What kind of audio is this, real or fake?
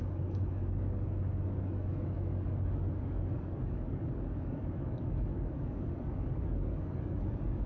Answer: fake